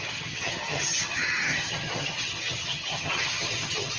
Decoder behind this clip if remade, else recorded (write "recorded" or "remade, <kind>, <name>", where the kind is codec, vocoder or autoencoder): remade, vocoder, HiFi-GAN